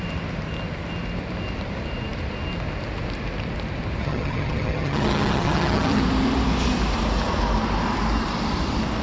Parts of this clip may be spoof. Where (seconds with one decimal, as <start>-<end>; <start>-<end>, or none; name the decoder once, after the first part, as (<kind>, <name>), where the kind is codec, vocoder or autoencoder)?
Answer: 4.0-6.0 (vocoder, HiFi-GAN)